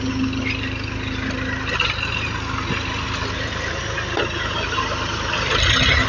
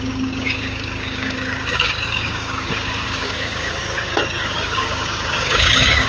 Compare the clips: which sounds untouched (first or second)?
first